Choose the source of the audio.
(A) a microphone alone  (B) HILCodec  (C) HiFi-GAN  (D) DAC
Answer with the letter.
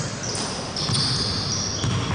A